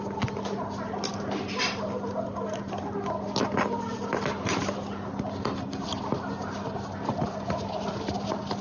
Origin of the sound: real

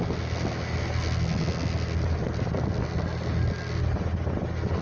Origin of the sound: real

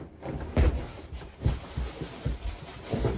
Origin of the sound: real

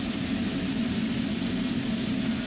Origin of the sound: real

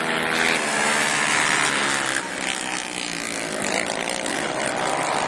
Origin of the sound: real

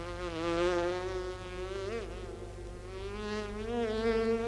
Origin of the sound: real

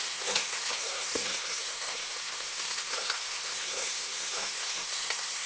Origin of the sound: fake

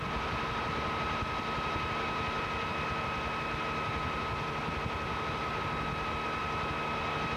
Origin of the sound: real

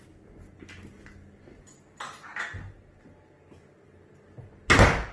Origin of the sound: real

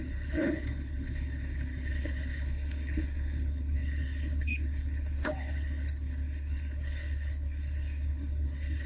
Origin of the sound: fake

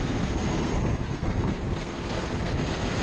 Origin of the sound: fake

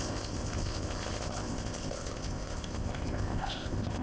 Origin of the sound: fake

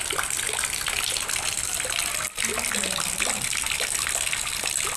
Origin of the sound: real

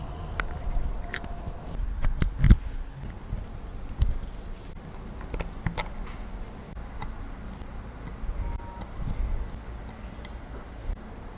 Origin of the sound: real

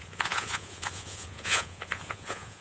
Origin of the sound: fake